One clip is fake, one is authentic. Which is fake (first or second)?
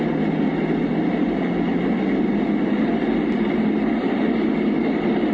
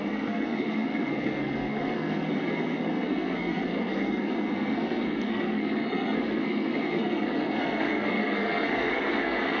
second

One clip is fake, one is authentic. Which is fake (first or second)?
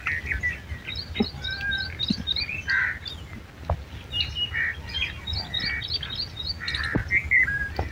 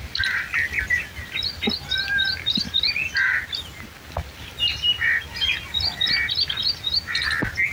second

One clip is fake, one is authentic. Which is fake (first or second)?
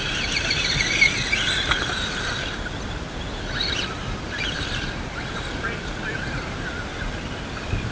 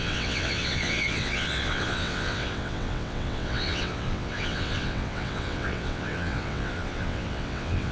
second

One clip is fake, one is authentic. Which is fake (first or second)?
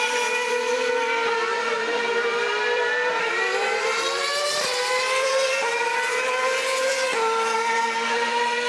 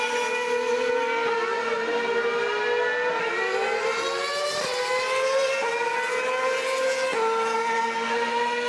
first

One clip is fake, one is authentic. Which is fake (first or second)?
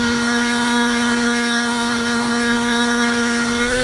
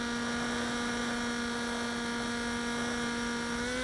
first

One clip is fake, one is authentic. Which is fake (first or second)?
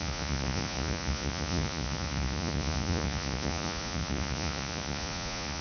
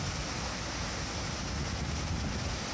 first